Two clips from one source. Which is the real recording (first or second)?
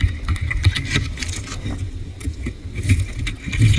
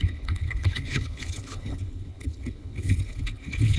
first